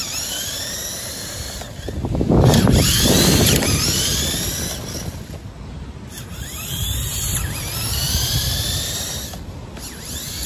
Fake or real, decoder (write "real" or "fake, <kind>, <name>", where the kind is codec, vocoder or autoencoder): real